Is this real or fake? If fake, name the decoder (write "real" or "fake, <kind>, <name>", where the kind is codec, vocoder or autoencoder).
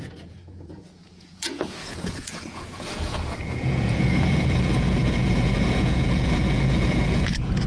fake, vocoder, Vocos